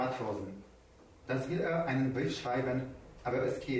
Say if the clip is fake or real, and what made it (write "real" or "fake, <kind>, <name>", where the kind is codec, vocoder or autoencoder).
real